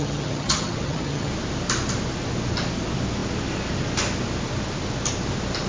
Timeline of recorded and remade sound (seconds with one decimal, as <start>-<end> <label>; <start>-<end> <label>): 0.0-1.3 remade; 1.3-5.7 recorded